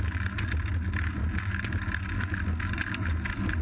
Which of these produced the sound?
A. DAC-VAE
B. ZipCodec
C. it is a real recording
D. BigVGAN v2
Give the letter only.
C